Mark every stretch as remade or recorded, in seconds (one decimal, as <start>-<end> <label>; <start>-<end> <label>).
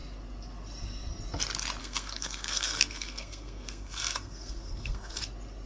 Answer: 0.0-1.8 recorded; 1.8-5.2 remade; 5.2-5.7 recorded